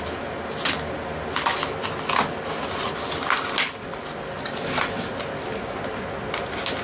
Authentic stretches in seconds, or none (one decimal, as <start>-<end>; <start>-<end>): 0.0-6.8